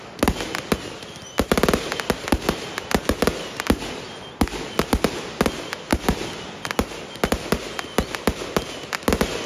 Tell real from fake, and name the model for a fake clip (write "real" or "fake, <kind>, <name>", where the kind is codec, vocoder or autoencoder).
real